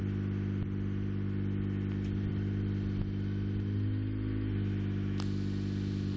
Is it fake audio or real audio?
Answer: real